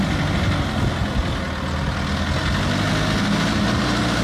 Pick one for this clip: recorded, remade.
recorded